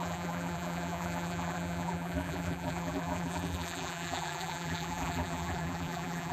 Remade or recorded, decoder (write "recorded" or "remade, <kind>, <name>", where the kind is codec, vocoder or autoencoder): remade, vocoder, BigVGAN v2